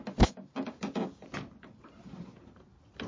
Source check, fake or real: real